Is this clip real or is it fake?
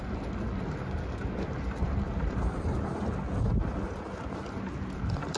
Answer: real